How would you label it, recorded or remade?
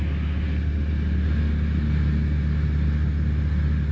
recorded